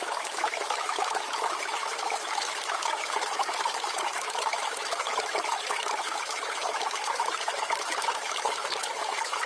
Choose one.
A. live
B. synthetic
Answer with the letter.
B